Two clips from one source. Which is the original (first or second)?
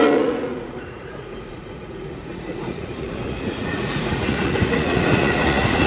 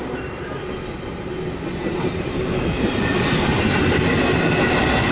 second